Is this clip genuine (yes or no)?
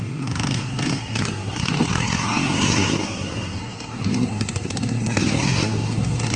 no